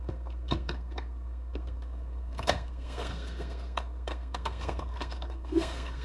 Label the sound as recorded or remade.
remade